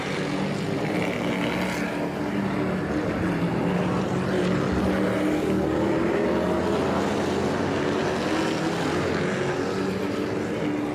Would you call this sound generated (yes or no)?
no